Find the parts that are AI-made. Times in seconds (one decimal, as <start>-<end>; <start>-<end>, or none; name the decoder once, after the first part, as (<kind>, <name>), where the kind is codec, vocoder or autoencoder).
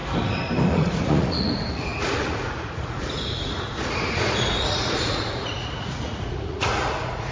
0.7-7.3 (vocoder, Vocos)